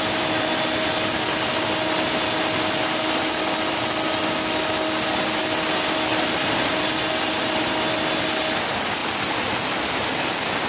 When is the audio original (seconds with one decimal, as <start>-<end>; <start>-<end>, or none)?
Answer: 0.0-6.1; 6.9-10.7